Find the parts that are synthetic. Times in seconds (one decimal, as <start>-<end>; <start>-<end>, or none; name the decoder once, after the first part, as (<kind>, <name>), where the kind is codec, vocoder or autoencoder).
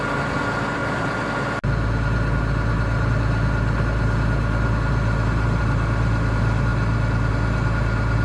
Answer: none